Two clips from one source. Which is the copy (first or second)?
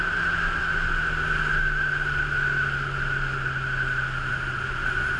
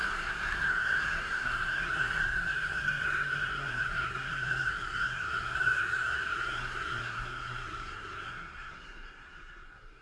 second